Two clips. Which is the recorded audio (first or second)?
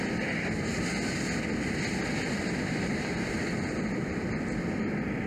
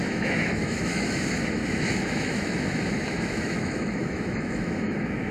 first